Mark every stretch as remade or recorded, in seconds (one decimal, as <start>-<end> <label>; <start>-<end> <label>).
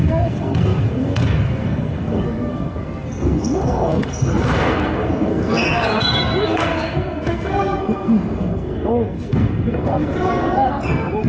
0.0-11.3 remade